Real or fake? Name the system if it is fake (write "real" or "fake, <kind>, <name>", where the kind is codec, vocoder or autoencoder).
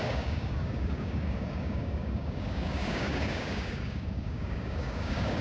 fake, codec, DAC